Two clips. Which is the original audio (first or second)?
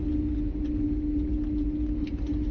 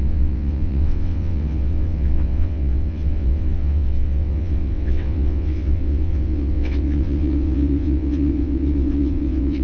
first